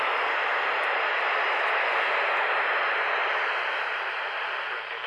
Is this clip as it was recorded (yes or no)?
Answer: yes